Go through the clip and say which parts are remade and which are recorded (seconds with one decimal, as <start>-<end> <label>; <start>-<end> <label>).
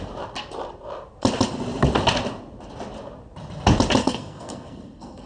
0.0-4.0 recorded; 4.0-5.3 remade